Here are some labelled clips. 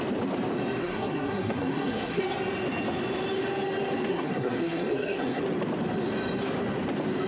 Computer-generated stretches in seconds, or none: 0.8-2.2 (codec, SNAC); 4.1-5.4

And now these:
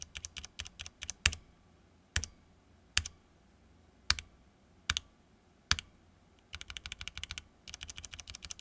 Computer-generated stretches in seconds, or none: none

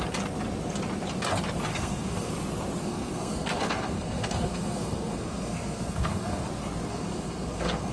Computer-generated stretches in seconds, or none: 1.7-2.3 (codec, SNAC); 2.8-6.5; 6.9-7.9

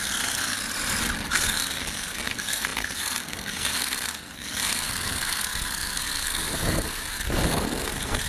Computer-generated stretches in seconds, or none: 0.0-0.6 (codec, SNAC); 1.3-8.3

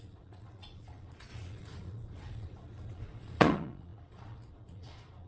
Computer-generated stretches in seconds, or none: 0.0-5.3 (vocoder, Vocos)

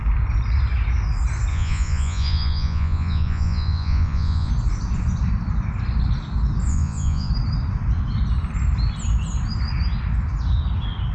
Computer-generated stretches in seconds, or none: 1.5-4.5 (vocoder, Vocos); 6.7-7.3

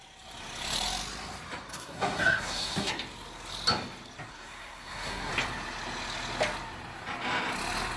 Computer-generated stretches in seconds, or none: 1.7-2.9 (codec, SNAC); 4.3-5.3

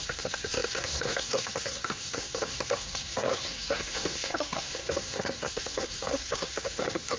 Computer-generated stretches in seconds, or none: 0.0-7.2 (codec, SNAC)